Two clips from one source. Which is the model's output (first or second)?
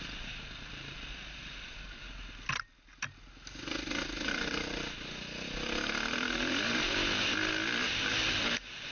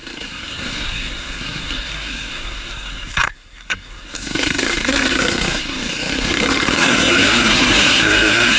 second